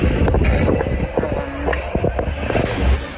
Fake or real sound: real